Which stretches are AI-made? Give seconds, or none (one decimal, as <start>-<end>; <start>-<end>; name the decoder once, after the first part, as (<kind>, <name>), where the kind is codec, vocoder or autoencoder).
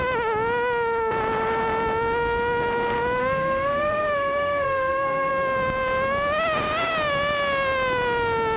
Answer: 3.2-5.3 (codec, SNAC)